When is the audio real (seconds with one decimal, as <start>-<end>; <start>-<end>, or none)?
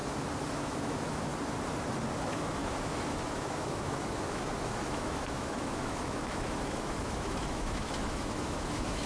0.0-0.5; 1.3-2.2